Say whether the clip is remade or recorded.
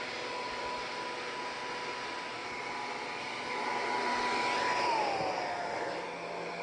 recorded